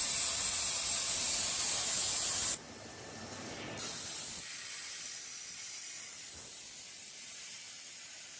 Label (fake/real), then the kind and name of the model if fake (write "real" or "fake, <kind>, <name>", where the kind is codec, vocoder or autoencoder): real